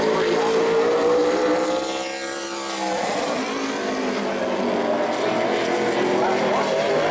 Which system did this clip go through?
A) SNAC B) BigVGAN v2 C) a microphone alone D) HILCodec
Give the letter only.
C